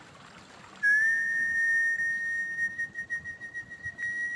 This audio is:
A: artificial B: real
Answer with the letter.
B